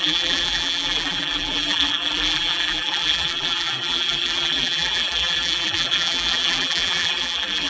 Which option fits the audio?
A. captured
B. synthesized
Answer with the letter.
B